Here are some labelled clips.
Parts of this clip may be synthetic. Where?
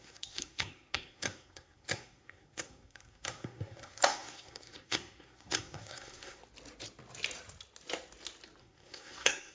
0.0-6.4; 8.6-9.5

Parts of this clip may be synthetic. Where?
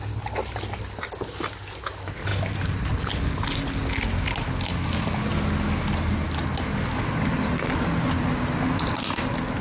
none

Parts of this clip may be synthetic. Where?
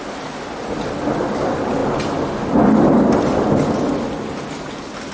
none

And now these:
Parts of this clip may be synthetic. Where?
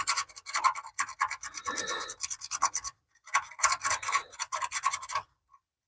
none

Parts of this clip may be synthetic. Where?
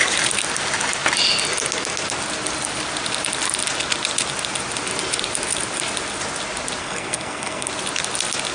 6.8-7.7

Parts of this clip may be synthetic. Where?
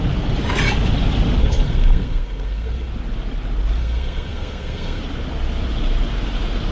1.4-2.9; 3.8-5.0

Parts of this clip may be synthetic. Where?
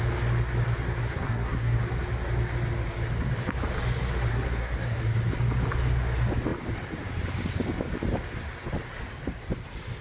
1.0-1.8; 4.3-5.0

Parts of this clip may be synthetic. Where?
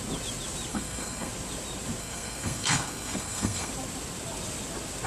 0.7-1.3; 2.0-3.7